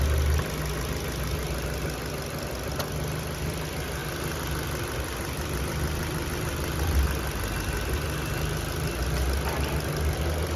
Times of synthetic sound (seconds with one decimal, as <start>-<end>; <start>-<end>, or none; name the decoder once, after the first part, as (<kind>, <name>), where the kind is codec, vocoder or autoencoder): none